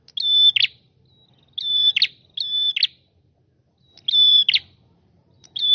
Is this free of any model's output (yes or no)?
yes